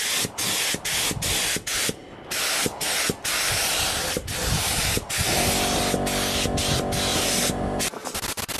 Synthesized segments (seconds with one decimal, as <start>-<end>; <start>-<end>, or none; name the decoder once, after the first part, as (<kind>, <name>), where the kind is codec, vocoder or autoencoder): 7.1-8.1 (vocoder, BigVGAN v2)